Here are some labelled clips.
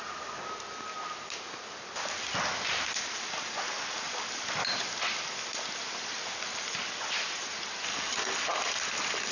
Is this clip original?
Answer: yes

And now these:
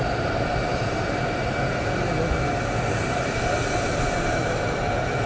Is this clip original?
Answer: yes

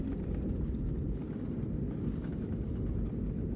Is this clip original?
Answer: yes